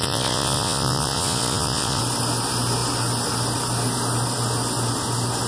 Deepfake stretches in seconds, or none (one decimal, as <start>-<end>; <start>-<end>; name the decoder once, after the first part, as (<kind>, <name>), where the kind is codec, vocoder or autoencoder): 0.0-2.0 (vocoder, Vocos)